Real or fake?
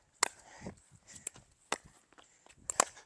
real